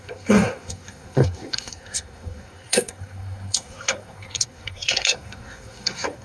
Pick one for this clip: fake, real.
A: fake